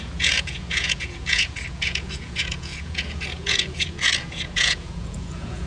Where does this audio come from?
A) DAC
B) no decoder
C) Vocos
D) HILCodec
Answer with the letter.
C